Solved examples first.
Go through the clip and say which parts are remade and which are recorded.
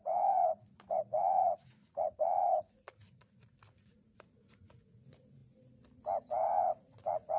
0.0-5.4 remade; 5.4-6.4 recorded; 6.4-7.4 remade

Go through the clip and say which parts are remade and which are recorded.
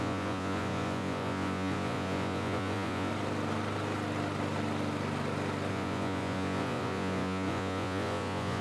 0.0-3.1 remade; 3.1-5.7 recorded; 5.7-8.6 remade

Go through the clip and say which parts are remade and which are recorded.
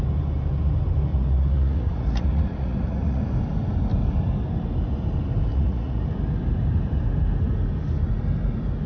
0.0-1.1 recorded; 1.1-3.2 remade; 3.2-5.5 recorded; 5.5-6.0 remade; 6.0-8.9 recorded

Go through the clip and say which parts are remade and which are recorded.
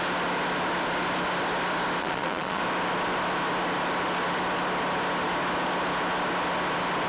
0.0-2.0 recorded; 2.0-2.6 remade; 2.6-7.1 recorded